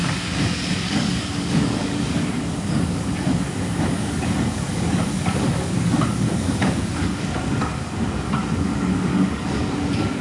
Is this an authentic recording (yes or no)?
no